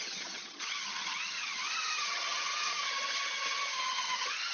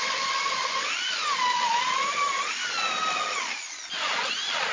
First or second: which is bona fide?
second